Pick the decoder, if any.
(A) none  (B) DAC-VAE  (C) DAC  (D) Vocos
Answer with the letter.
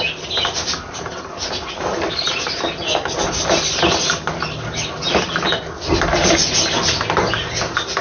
A